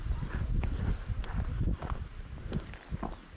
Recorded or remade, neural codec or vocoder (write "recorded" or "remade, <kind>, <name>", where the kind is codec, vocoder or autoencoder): recorded